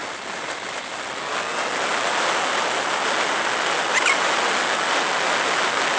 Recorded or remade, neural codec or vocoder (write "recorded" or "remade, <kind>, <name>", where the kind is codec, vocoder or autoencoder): recorded